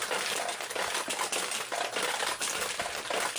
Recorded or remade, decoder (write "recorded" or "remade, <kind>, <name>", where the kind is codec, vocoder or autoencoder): recorded